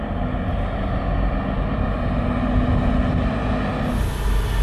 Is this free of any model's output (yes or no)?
yes